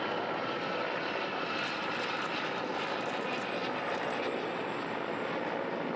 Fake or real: real